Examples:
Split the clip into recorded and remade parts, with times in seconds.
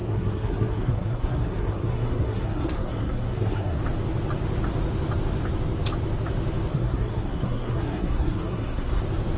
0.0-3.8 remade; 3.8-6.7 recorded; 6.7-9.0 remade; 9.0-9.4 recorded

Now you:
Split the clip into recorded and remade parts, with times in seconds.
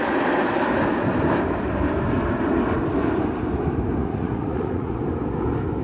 0.0-4.0 recorded; 4.0-5.0 remade; 5.0-5.8 recorded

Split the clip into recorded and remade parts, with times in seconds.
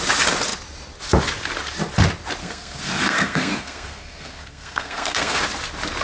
0.0-2.4 recorded; 2.4-5.4 remade; 5.4-6.0 recorded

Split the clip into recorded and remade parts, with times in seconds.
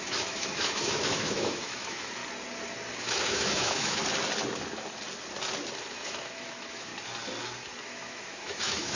0.0-2.2 remade; 2.2-3.0 recorded; 3.0-4.0 remade; 4.0-5.9 recorded; 5.9-6.9 remade; 6.9-7.8 recorded; 7.8-9.0 remade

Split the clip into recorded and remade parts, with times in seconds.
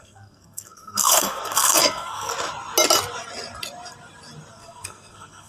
0.0-2.3 remade; 2.3-4.5 recorded; 4.5-5.5 remade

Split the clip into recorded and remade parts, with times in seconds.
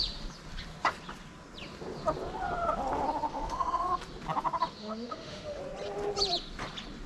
0.0-3.3 recorded; 3.3-4.0 remade; 4.0-4.8 recorded; 4.8-5.6 remade; 5.6-7.1 recorded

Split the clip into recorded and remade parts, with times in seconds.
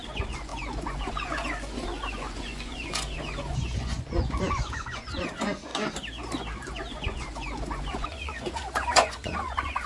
0.0-5.7 remade; 5.7-6.6 recorded; 6.6-9.9 remade